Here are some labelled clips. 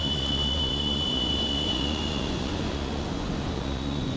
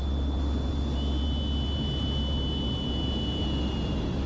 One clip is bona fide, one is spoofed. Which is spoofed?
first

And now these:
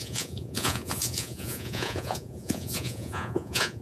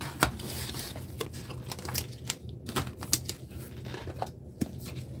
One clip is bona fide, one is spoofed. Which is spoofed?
first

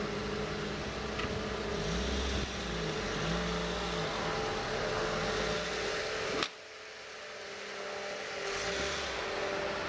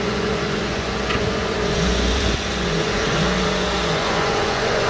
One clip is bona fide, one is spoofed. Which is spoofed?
second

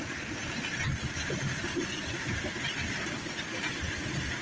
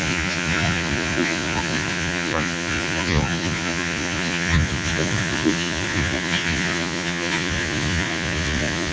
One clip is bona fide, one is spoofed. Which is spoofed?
second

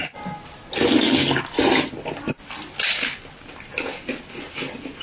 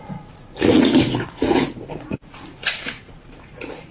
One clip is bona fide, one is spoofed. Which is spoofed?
second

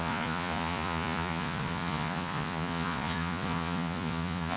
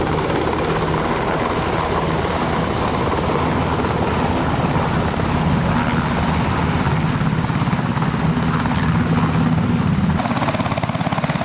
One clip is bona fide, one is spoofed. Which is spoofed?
first